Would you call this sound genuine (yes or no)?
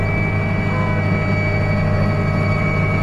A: yes